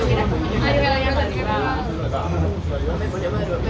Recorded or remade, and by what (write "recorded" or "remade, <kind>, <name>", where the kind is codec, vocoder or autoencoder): recorded